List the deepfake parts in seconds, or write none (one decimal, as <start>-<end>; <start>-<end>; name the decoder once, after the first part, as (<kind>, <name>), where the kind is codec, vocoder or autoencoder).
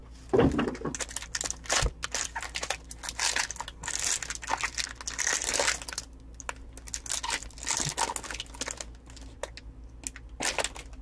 none